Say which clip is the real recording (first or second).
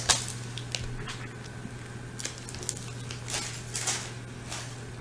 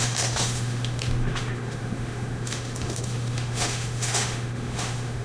first